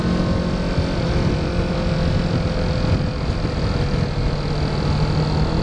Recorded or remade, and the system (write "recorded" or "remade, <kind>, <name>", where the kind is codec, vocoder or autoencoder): recorded